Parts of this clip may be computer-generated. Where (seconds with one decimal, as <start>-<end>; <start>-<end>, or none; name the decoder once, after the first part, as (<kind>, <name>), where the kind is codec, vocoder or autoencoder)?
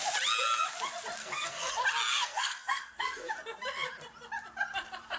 1.2-1.7 (codec, SNAC); 2.1-3.3